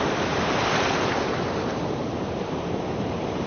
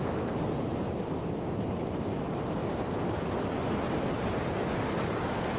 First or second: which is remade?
first